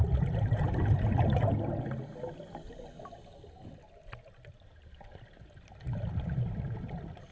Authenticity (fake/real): real